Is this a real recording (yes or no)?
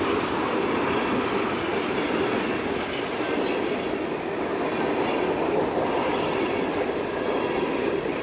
yes